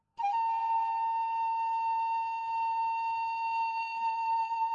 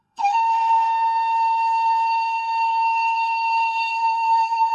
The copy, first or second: second